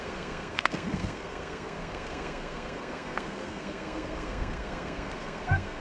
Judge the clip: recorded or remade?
remade